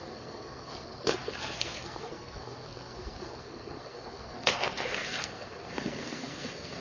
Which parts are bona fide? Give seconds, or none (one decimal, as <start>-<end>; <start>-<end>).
none